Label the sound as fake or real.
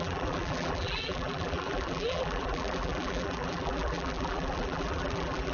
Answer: fake